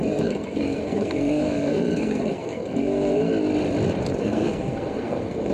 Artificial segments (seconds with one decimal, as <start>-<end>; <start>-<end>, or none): 0.0-3.3; 4.2-5.5